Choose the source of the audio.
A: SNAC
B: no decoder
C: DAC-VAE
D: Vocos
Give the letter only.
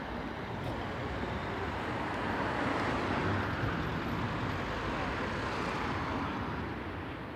B